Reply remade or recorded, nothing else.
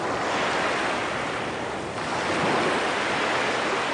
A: recorded